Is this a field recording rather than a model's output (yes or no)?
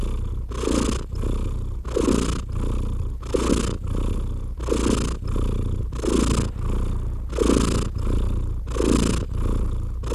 yes